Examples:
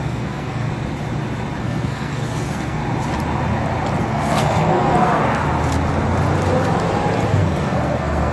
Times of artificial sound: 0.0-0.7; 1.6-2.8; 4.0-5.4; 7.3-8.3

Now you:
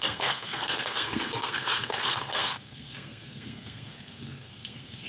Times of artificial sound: 0.0-5.1